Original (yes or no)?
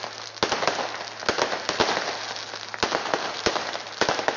yes